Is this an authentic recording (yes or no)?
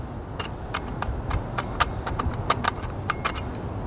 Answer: yes